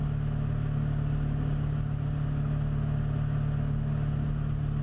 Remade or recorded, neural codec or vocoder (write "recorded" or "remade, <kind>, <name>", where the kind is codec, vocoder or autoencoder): recorded